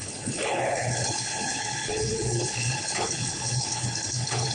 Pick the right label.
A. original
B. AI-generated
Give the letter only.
B